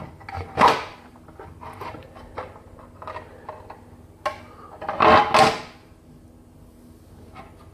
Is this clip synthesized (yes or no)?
no